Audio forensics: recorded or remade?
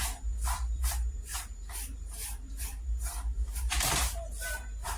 remade